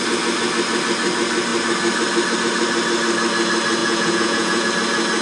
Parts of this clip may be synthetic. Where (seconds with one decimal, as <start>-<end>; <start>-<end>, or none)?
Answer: 3.8-4.7